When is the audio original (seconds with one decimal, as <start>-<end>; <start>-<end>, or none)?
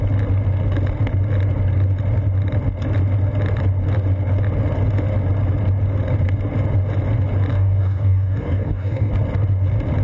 0.0-7.5; 9.1-10.0